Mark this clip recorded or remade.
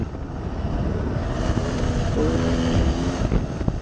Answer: recorded